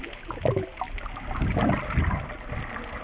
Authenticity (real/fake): real